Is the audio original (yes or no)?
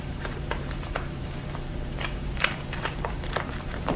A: no